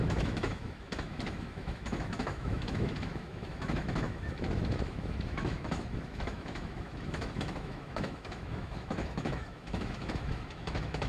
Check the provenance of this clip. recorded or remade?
remade